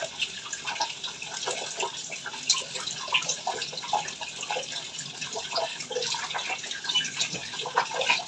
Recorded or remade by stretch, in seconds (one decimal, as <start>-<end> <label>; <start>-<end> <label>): 0.0-8.3 recorded